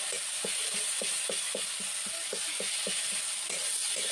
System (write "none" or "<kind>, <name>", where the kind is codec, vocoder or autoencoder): vocoder, BigVGAN v2